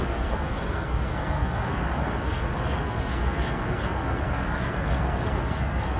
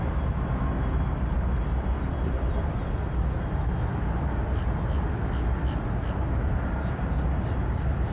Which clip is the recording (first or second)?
second